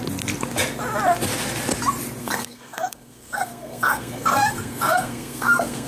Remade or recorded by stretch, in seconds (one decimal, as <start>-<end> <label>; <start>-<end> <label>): 0.0-2.2 recorded; 2.2-5.9 remade